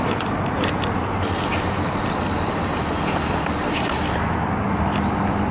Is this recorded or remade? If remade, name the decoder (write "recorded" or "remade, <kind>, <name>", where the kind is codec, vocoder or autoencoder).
recorded